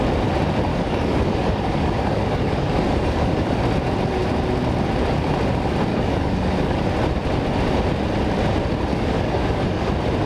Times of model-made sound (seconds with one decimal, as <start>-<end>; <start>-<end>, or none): 0.7-3.6; 5.9-6.8; 8.9-9.9